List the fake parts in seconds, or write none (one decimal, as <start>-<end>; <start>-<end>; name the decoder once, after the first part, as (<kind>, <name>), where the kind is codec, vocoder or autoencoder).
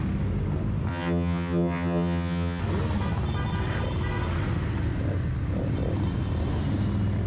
0.9-2.6 (vocoder, HiFi-GAN)